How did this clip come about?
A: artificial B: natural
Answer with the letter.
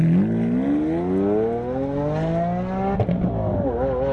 B